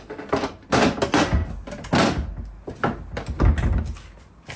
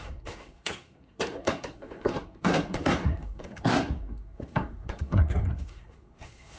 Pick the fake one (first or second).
second